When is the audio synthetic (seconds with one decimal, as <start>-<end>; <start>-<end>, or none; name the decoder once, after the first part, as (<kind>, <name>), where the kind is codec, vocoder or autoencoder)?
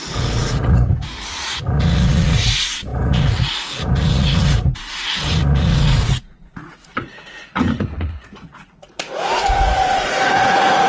0.0-10.9 (vocoder, Vocos)